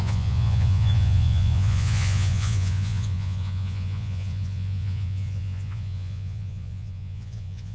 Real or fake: fake